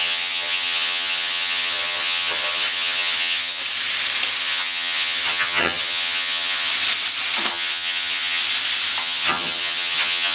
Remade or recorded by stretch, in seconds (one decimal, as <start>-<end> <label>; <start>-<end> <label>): 0.0-3.6 remade; 3.6-4.4 recorded; 4.4-6.7 remade; 6.7-7.5 recorded; 7.5-8.4 remade; 8.4-9.0 recorded; 9.0-10.3 remade